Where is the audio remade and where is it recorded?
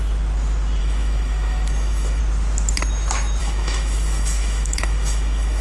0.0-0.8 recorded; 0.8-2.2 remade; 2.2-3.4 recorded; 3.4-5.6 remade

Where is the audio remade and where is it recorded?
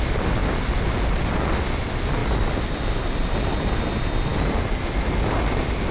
0.0-2.2 recorded; 2.2-2.8 remade; 2.8-4.3 recorded; 4.3-4.8 remade; 4.8-5.9 recorded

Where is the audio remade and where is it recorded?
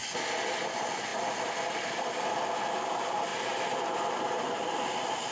0.0-0.5 recorded; 0.5-3.3 remade; 3.3-4.5 recorded; 4.5-5.3 remade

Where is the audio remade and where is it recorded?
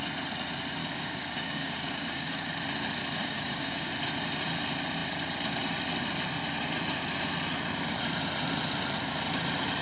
0.0-0.8 recorded; 0.8-2.5 remade; 2.5-3.2 recorded; 3.2-3.9 remade; 3.9-9.8 recorded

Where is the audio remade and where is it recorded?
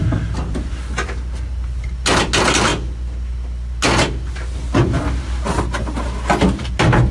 0.0-7.1 recorded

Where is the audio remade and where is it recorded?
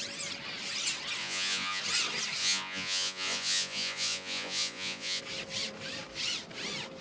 0.0-1.2 recorded; 1.2-1.8 remade; 1.8-2.4 recorded; 2.4-5.2 remade; 5.2-7.0 recorded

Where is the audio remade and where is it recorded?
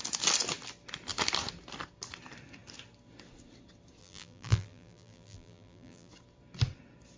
0.0-4.0 recorded; 4.0-6.1 remade; 6.1-7.2 recorded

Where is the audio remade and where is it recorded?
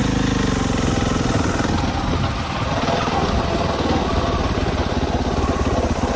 0.0-6.2 recorded